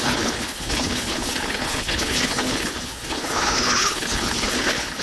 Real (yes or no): no